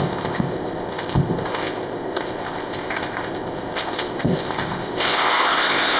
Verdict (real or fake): fake